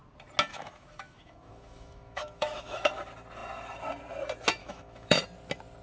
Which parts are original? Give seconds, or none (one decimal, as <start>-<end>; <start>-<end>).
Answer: 0.0-0.5; 2.9-4.6; 5.2-5.8